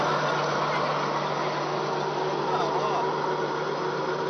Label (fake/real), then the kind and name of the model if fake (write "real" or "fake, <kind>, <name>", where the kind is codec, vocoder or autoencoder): real